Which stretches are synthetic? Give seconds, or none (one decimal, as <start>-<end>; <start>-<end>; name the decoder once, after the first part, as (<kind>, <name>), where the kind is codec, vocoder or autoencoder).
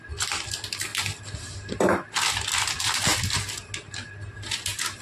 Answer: none